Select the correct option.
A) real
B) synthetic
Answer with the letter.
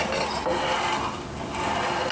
A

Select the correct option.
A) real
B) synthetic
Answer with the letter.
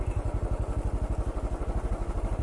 A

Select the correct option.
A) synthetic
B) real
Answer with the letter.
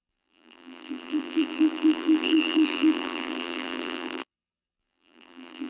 A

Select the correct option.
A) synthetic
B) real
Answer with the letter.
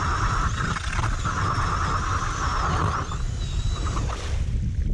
B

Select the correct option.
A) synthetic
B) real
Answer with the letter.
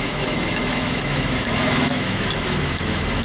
A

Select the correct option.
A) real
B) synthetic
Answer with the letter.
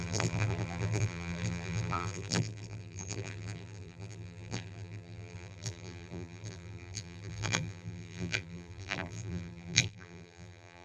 B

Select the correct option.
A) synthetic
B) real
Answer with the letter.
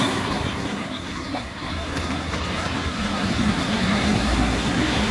A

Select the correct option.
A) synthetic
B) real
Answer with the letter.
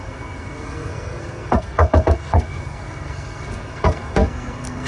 A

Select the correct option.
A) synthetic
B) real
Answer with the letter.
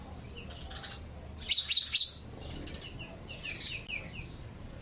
B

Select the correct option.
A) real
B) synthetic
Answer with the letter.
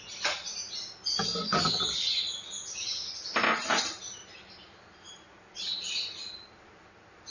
A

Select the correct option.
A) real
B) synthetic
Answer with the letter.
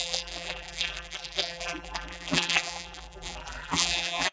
B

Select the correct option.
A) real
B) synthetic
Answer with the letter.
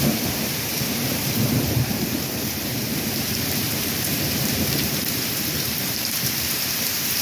B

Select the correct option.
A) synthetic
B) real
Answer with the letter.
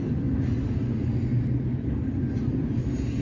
B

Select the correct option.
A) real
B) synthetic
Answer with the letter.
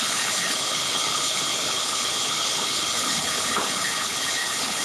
B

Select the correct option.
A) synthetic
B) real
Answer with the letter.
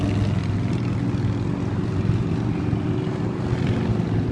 B